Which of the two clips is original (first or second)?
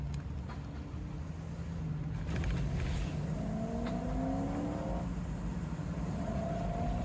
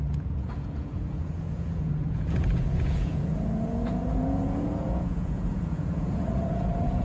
first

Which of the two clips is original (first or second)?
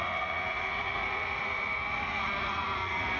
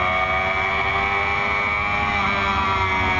second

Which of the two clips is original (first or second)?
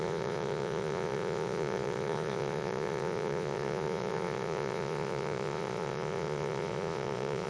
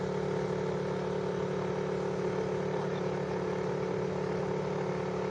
second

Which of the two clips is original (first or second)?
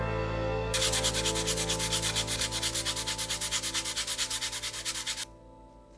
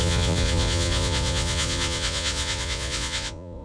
first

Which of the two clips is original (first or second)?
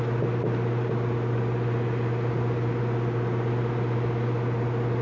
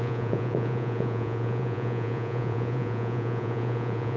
first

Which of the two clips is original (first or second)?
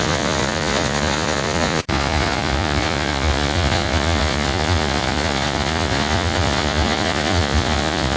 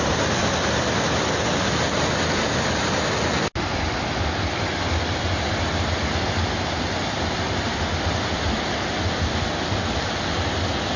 second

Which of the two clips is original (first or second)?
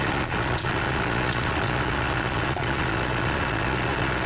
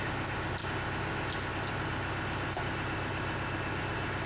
second